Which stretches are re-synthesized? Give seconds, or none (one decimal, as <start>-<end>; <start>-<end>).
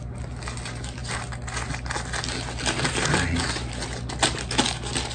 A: none